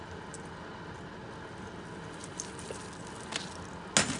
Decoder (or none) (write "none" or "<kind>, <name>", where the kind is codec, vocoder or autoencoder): none